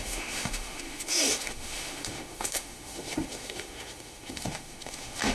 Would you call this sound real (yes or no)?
no